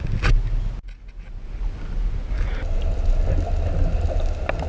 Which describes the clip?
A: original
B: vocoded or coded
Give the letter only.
A